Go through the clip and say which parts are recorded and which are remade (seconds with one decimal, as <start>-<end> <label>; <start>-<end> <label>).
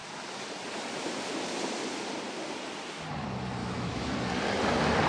0.0-3.6 recorded; 3.6-4.1 remade; 4.1-5.1 recorded